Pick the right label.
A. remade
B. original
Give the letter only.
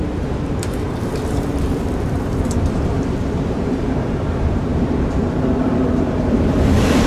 A